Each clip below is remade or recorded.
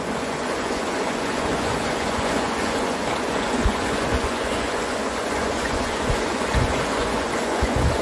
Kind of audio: remade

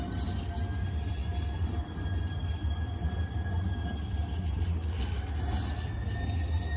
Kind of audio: recorded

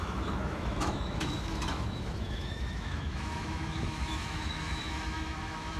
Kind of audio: remade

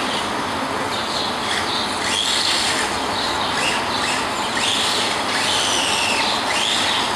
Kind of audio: recorded